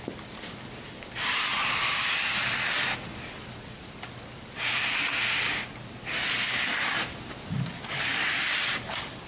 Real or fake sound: real